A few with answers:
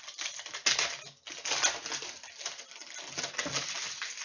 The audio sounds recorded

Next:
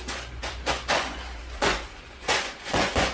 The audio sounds remade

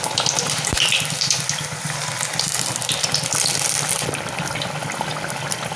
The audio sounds recorded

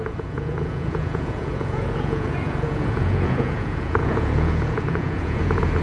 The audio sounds remade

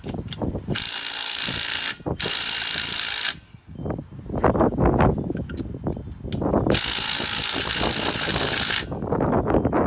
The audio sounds recorded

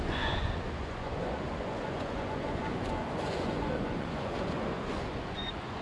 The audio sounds remade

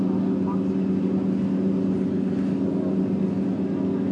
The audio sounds recorded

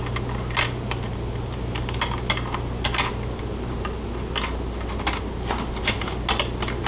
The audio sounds recorded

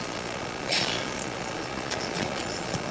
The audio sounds remade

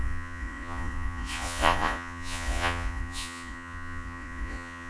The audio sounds remade